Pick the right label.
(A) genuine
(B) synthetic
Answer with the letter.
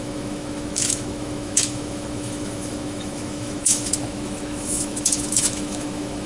B